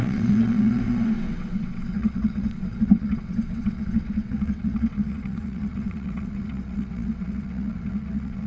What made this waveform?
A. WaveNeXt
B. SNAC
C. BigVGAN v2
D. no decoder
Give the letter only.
A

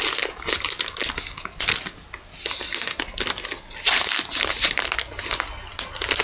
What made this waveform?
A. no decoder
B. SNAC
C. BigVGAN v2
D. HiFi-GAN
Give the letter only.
A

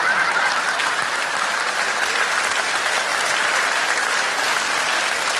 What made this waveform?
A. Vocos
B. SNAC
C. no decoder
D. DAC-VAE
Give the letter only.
C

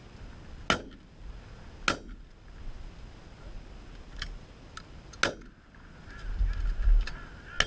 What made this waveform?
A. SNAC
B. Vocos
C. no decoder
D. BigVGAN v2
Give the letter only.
C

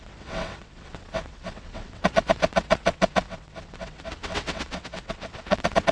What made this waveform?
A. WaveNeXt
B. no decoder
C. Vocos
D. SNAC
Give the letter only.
A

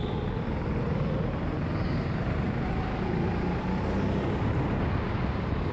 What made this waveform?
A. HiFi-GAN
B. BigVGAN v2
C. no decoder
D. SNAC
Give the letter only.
C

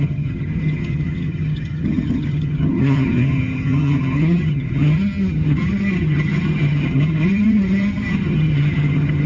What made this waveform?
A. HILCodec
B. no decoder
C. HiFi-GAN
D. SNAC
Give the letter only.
C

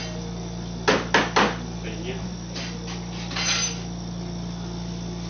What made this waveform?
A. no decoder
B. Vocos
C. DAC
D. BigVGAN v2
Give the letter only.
A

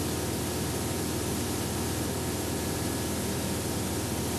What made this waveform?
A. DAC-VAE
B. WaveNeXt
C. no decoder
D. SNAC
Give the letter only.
C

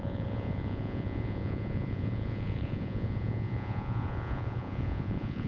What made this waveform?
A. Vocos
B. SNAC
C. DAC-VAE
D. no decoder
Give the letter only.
A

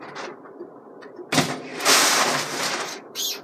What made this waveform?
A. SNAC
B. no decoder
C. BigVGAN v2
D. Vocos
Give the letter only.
B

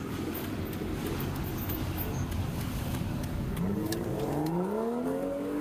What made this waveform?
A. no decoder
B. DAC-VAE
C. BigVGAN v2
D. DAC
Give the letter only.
D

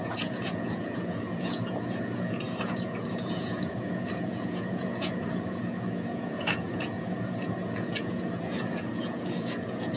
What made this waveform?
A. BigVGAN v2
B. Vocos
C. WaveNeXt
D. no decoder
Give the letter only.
B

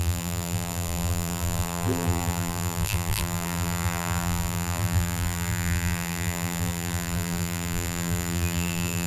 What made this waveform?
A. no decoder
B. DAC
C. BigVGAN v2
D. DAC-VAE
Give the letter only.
C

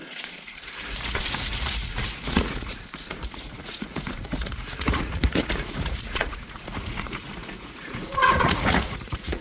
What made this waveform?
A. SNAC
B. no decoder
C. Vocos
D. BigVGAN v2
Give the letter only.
C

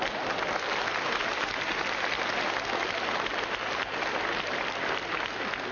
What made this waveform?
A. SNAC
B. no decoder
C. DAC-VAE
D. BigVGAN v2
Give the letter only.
B